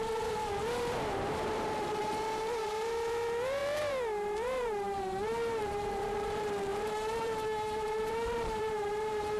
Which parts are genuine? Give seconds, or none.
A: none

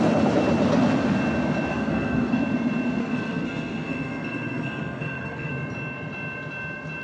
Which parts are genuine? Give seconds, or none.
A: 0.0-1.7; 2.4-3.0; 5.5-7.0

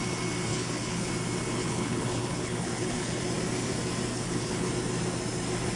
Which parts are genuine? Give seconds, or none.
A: 0.0-0.5; 1.1-1.6; 3.2-4.1; 4.7-5.8

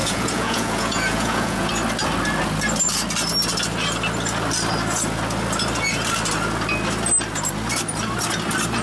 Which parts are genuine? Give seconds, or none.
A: 1.7-8.8

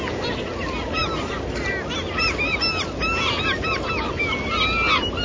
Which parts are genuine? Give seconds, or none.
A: 0.0-5.2